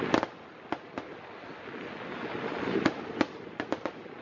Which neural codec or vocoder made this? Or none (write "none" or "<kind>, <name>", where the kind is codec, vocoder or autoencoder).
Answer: none